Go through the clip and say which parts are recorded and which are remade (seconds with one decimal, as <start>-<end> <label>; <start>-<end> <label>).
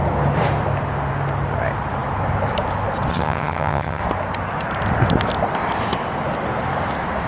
0.0-3.1 recorded; 3.1-4.0 remade; 4.0-7.3 recorded